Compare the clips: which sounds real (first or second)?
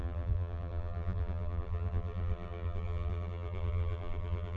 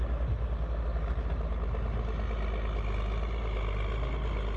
second